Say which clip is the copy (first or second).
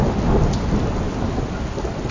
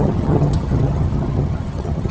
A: second